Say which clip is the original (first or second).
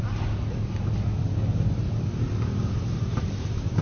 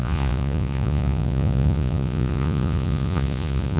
first